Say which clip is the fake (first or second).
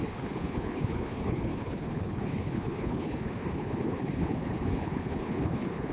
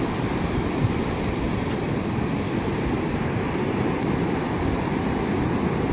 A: first